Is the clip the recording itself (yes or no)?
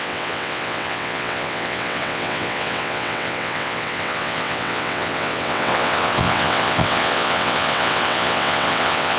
no